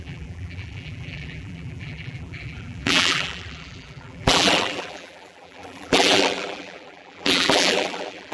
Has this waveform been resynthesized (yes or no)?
yes